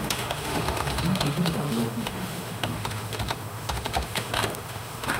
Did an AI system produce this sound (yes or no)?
yes